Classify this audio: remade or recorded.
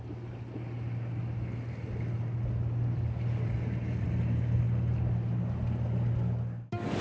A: recorded